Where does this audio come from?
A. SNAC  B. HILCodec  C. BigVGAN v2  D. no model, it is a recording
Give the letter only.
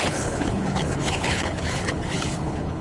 B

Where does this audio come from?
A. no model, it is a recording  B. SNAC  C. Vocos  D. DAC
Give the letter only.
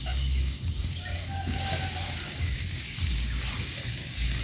D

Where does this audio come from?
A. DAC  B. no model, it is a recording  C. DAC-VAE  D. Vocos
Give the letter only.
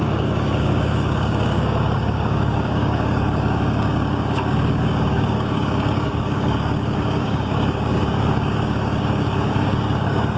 A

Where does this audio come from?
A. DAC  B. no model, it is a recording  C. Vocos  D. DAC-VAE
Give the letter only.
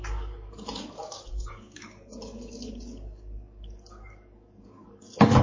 A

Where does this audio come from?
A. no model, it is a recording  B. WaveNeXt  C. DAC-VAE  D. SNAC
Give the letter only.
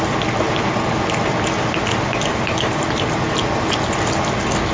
A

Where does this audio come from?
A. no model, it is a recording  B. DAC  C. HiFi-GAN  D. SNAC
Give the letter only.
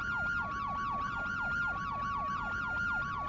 A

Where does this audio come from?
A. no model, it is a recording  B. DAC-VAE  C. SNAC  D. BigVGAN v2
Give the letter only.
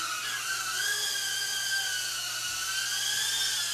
A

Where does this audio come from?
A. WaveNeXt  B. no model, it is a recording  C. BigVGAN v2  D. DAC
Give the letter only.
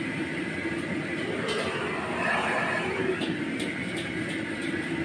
B